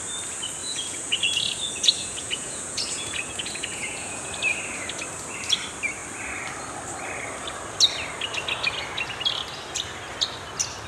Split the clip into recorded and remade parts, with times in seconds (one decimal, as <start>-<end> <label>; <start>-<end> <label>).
0.0-0.6 recorded; 0.6-4.3 remade; 4.3-10.9 recorded